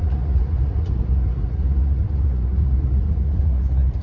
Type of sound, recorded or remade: remade